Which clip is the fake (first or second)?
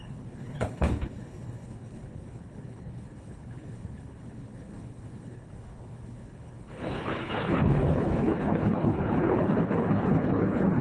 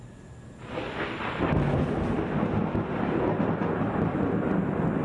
first